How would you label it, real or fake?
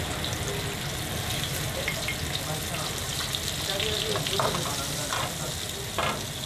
real